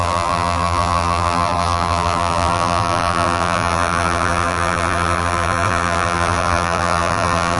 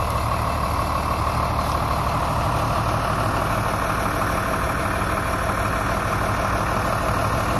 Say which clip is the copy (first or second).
first